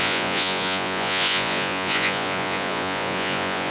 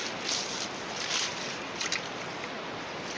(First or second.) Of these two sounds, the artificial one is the first